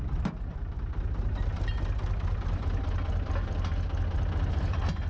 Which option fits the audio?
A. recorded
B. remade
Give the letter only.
B